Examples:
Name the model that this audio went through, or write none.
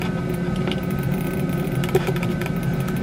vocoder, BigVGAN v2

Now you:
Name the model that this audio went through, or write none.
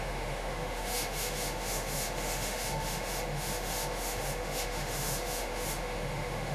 autoencoder, DAC-VAE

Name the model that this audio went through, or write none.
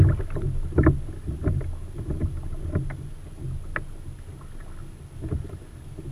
none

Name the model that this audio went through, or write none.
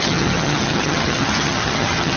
vocoder, HiFi-GAN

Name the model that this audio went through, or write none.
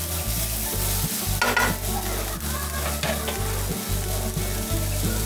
none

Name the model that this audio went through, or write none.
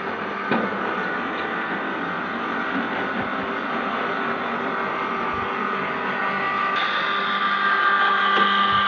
none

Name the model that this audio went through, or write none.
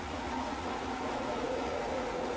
vocoder, Vocos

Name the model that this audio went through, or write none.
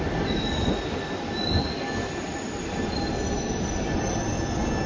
none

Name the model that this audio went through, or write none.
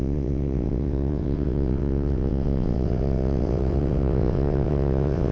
vocoder, WaveNeXt